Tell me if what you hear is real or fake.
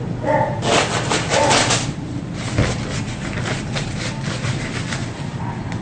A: real